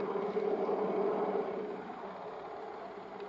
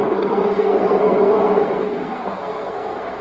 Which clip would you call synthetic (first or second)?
second